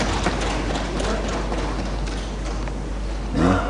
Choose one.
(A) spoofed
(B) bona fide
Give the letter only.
B